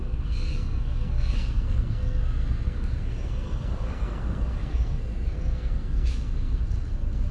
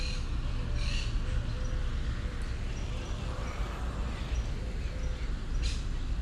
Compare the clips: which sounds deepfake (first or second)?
first